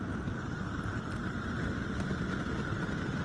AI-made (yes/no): no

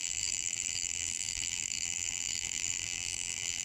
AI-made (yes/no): yes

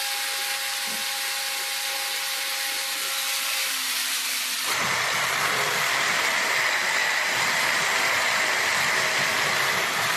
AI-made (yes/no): yes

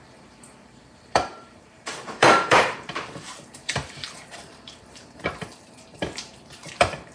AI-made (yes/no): yes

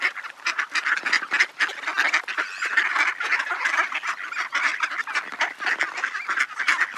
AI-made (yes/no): no